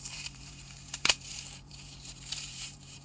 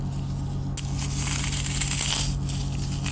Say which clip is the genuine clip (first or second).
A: second